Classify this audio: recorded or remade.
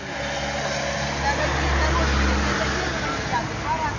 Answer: recorded